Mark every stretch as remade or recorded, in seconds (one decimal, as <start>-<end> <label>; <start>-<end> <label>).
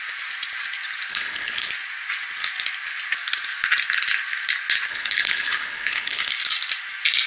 0.0-1.1 recorded; 1.1-1.7 remade; 1.7-4.9 recorded; 4.9-6.3 remade; 6.3-7.3 recorded